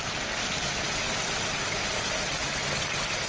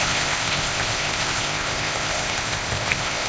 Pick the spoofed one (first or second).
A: second